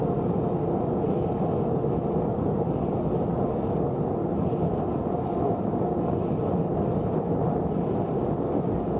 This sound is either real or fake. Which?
real